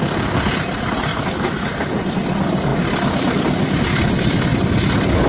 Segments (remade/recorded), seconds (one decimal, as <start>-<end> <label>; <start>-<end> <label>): 0.0-1.1 recorded; 1.1-1.7 remade; 1.7-5.3 recorded